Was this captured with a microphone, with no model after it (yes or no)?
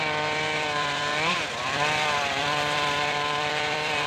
no